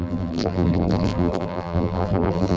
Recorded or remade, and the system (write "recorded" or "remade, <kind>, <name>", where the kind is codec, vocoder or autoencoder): remade, vocoder, BigVGAN v2